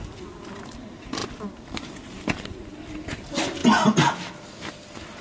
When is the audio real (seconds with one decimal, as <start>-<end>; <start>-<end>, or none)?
0.0-5.2